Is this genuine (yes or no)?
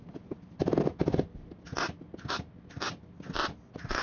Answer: yes